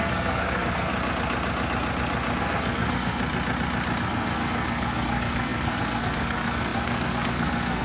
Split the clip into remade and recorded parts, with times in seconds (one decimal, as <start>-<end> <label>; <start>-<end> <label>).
0.0-0.9 remade; 0.9-2.4 recorded; 2.4-3.2 remade; 3.2-4.0 recorded; 4.0-7.8 remade